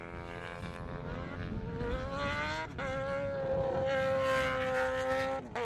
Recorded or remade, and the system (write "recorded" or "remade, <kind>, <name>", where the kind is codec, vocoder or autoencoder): recorded